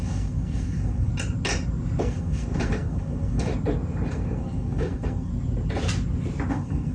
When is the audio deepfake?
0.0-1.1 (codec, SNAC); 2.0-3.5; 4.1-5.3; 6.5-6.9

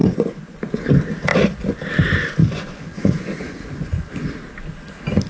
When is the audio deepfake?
0.0-0.6 (vocoder, Vocos); 2.4-4.3

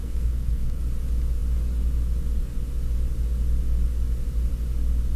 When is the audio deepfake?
0.0-0.8 (codec, SNAC)